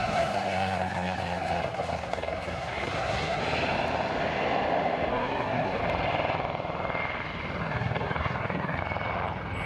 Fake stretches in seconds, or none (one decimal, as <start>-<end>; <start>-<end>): 0.0-3.4; 5.1-5.8; 7.6-8.8